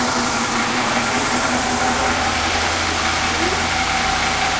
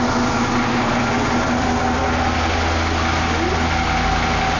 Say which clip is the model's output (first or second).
first